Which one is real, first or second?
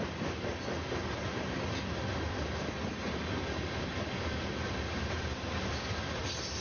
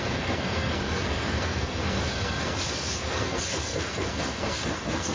first